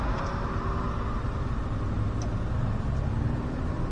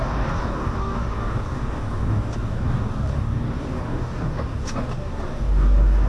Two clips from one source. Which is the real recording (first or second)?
first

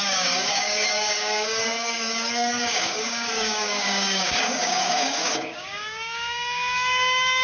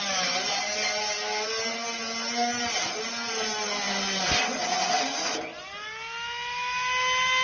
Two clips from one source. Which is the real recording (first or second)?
second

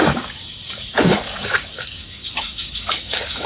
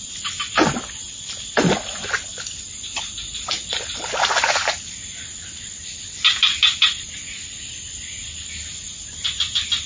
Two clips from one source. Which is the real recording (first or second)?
second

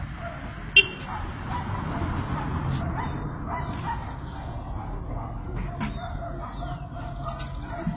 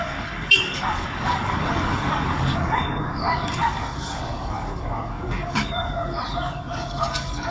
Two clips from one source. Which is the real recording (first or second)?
first